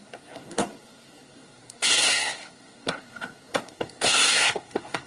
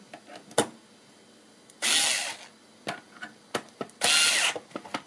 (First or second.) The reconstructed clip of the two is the first